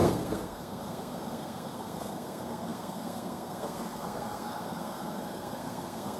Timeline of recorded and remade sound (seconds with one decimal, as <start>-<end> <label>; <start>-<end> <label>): 0.0-6.2 remade